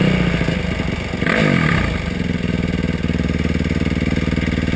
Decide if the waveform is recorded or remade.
recorded